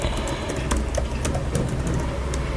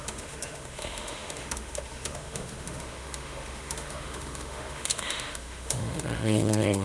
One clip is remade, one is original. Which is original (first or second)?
first